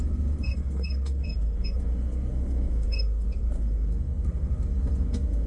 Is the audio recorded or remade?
remade